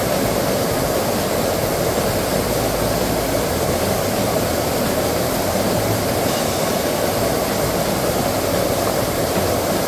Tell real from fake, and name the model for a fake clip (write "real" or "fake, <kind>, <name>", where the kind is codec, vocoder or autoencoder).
fake, vocoder, BigVGAN v2